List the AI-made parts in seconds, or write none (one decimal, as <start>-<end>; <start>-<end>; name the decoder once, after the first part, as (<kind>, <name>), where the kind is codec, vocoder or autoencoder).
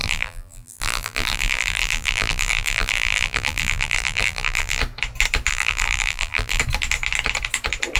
0.0-4.8 (vocoder, BigVGAN v2); 5.5-6.6